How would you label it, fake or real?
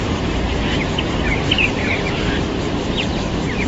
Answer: fake